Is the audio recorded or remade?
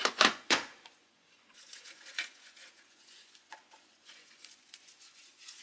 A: remade